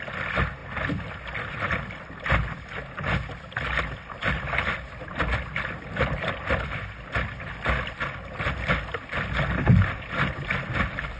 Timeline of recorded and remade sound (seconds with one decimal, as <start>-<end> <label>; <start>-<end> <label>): 0.0-11.2 recorded

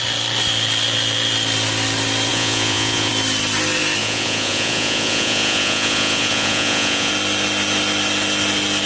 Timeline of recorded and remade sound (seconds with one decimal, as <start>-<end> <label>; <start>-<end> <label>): 0.0-2.3 recorded; 2.3-3.1 remade; 3.1-4.0 recorded; 4.0-7.1 remade; 7.1-8.9 recorded

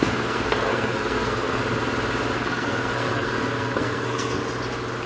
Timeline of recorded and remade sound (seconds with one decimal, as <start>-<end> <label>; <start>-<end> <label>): 0.0-1.6 remade; 1.6-2.3 recorded; 2.3-4.4 remade; 4.4-5.1 recorded

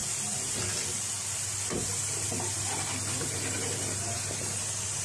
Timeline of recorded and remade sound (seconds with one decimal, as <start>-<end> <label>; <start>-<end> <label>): 0.0-5.0 recorded

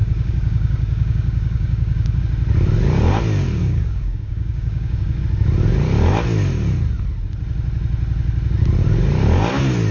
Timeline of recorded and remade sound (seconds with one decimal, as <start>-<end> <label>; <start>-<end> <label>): 0.0-2.2 remade; 2.2-3.6 recorded; 3.6-5.2 remade; 5.2-9.9 recorded

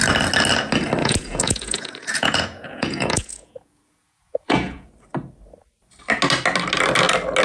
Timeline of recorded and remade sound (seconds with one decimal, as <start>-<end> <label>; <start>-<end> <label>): 0.0-1.0 recorded; 1.0-4.9 remade; 4.9-7.4 recorded

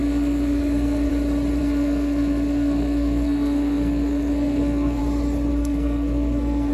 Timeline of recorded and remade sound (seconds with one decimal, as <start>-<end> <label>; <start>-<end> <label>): 0.0-1.1 remade; 1.1-1.6 recorded; 1.6-5.0 remade; 5.0-5.5 recorded; 5.5-6.7 remade